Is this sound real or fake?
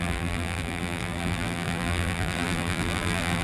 fake